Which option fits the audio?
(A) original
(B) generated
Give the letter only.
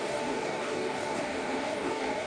B